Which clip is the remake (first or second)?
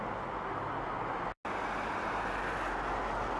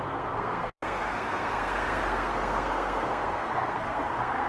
second